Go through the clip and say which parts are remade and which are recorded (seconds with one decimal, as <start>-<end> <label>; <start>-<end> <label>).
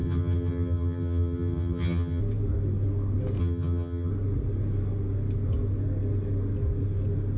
0.0-2.2 remade; 2.2-3.4 recorded; 3.4-4.1 remade; 4.1-7.4 recorded